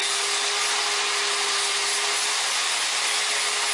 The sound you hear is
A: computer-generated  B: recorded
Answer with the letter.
B